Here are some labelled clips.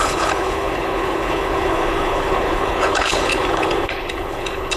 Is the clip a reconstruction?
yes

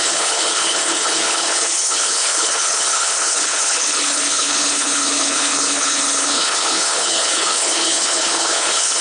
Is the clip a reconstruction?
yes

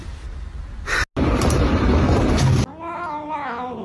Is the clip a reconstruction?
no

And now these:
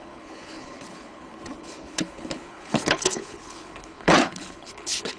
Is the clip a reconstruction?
yes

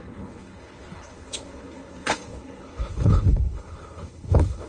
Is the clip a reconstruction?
yes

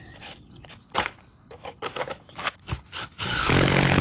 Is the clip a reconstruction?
yes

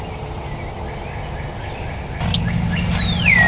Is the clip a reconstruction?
no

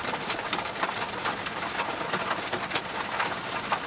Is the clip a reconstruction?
no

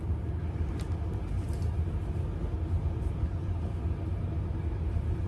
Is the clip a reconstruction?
no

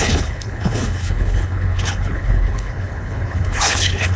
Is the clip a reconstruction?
yes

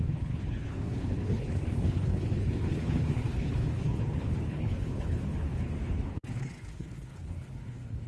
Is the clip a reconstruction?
yes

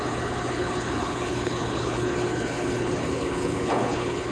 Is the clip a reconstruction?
yes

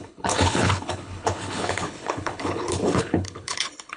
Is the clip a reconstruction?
yes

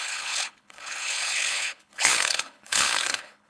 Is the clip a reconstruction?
yes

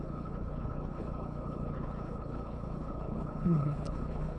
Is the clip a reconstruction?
yes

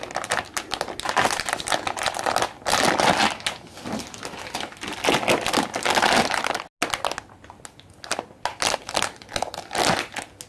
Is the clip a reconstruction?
no